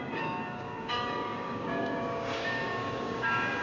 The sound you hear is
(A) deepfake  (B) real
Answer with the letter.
A